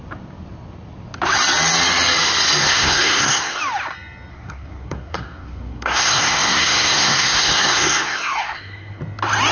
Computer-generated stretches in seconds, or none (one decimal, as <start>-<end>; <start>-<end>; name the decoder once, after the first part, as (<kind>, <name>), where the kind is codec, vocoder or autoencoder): 2.6-3.6 (codec, SNAC); 4.3-9.0